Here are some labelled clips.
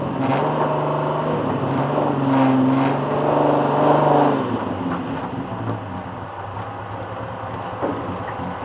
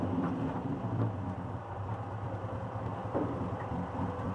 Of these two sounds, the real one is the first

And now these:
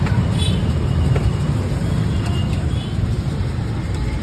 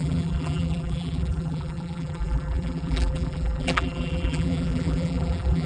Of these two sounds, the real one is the first